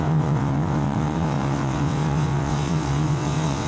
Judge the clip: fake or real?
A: fake